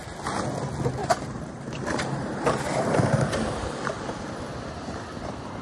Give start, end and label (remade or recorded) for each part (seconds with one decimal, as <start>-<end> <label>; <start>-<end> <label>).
0.0-1.0 recorded; 1.0-4.4 remade; 4.4-5.6 recorded